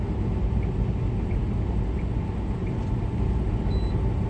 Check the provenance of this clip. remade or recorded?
recorded